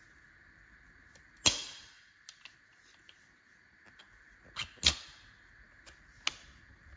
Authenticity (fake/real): real